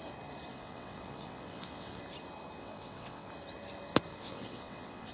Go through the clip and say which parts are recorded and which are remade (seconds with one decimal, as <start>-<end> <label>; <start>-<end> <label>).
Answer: 0.0-0.5 recorded; 0.5-2.0 remade; 2.0-2.6 recorded; 2.6-3.3 remade; 3.3-4.1 recorded; 4.1-5.1 remade